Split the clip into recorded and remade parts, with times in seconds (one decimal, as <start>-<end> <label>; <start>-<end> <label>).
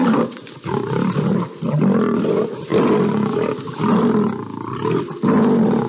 0.0-5.9 recorded